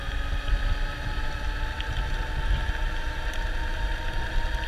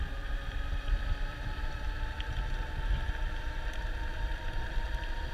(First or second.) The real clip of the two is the first